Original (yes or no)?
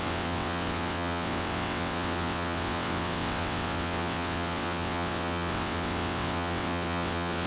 no